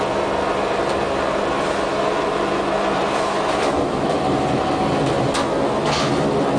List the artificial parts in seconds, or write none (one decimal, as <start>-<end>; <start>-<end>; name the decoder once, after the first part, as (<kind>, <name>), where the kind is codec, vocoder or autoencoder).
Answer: 1.9-4.6 (vocoder, BigVGAN v2)